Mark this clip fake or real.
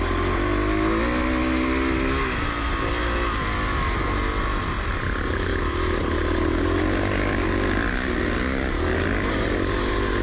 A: real